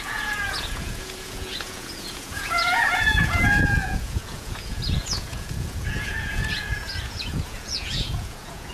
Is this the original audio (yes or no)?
no